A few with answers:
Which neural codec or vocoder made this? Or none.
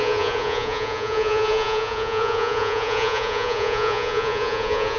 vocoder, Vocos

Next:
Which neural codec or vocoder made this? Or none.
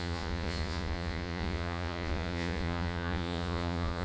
vocoder, Vocos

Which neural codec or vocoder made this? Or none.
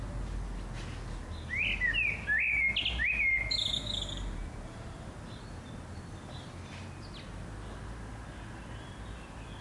none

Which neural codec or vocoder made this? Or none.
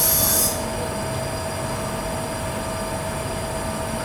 none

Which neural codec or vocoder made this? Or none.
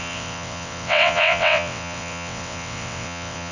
vocoder, WaveNeXt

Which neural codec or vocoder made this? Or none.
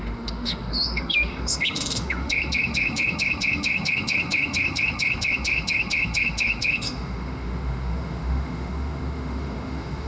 autoencoder, DAC-VAE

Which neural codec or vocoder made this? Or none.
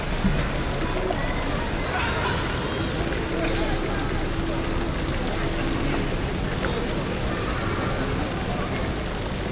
none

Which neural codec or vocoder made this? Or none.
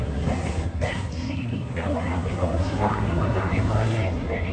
codec, SNAC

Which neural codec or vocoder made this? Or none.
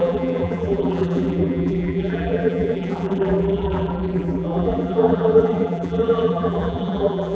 vocoder, BigVGAN v2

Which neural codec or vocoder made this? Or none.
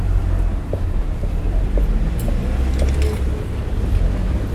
none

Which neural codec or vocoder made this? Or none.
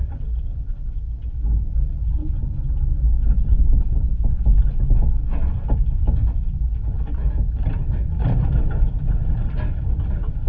none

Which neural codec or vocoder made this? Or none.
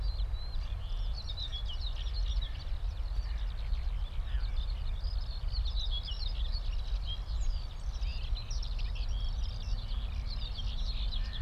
none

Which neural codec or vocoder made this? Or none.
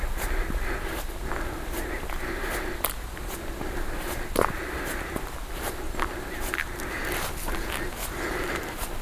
none